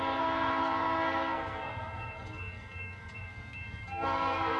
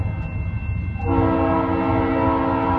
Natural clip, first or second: second